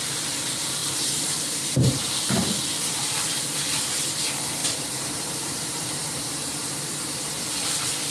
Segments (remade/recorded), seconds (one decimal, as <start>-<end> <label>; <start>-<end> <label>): 0.0-0.8 recorded; 0.8-2.1 remade; 2.1-4.6 recorded; 4.6-7.3 remade; 7.3-8.1 recorded